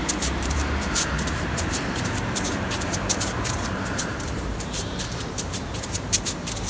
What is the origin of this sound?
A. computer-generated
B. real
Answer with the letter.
A